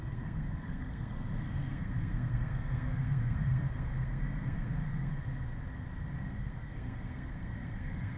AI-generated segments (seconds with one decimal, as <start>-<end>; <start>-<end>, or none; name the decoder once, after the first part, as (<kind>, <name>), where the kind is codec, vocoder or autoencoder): 0.0-5.1 (codec, SNAC); 6.1-8.2